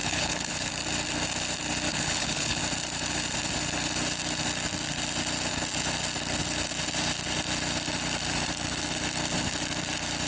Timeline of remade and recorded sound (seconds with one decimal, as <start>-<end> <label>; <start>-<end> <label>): 0.0-0.7 remade; 0.7-1.9 recorded; 1.9-2.6 remade; 2.6-10.3 recorded